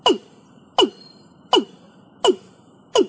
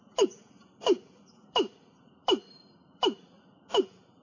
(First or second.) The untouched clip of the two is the first